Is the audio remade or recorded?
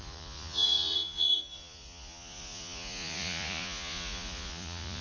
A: remade